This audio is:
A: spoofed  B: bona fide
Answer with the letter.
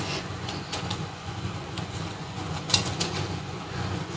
A